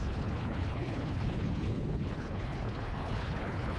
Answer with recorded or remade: remade